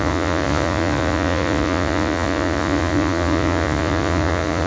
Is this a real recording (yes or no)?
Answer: no